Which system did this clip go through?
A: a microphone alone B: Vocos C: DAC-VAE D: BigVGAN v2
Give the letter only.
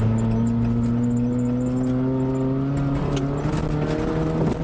A